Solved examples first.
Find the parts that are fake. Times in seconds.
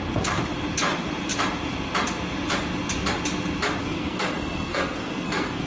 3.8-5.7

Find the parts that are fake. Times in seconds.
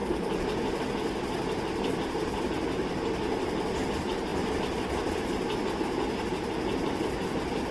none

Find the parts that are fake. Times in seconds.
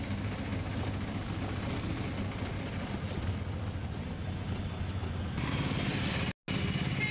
none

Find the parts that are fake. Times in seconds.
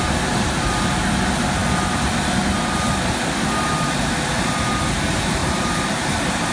5.4-6.5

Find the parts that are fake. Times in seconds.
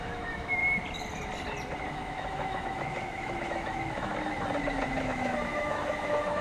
0.0-0.6; 1.9-4.1; 5.0-6.4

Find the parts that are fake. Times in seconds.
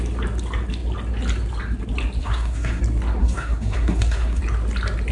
2.2-2.8; 3.2-4.4